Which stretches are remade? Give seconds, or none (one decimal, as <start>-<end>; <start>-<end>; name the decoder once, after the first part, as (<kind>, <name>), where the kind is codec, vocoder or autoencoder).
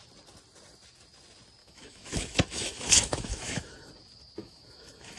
1.6-3.9 (autoencoder, DAC-VAE); 4.4-5.2